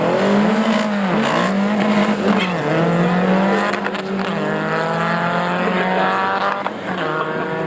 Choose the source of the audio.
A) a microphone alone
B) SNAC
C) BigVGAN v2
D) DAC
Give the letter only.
A